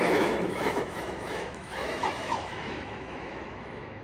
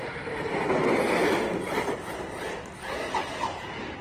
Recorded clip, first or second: second